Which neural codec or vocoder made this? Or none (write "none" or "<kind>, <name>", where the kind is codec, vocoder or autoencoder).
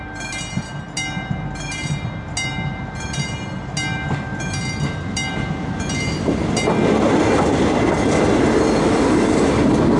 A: none